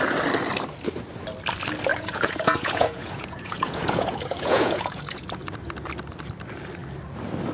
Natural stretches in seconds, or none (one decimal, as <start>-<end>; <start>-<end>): 0.0-1.9; 5.3-7.5